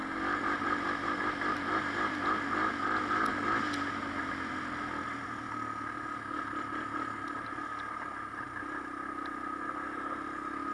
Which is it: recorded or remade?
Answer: recorded